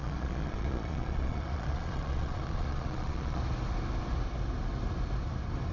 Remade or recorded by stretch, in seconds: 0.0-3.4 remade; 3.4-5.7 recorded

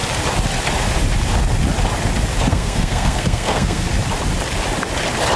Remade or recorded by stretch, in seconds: 0.0-2.5 recorded; 2.5-3.9 remade; 3.9-5.4 recorded

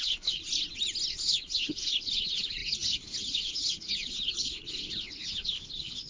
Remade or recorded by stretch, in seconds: 0.0-0.4 remade; 0.4-1.1 recorded; 1.1-6.1 remade

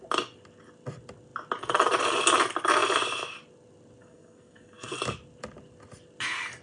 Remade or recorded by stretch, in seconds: 0.0-4.0 recorded; 4.0-5.0 remade; 5.0-6.6 recorded

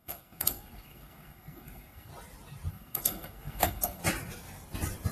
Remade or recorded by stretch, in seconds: 0.0-2.1 remade; 2.1-2.7 recorded; 2.7-4.0 remade; 4.0-5.1 recorded

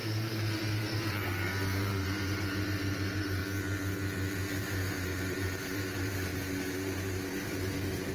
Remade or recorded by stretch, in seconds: 0.0-3.4 remade; 3.4-4.6 recorded; 4.6-8.1 remade